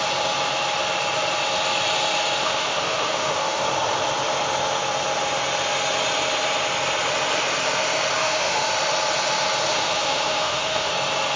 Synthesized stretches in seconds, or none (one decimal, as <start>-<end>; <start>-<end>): 2.4-3.6; 8.2-8.7; 9.7-10.9